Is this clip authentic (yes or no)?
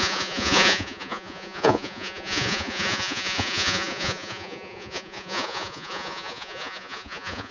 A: no